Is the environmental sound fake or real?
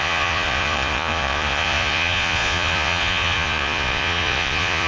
fake